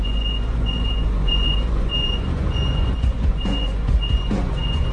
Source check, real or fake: fake